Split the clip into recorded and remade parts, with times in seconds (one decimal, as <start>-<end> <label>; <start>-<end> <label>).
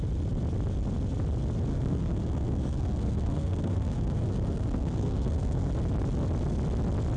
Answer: 0.0-1.7 recorded; 1.7-5.7 remade; 5.7-7.2 recorded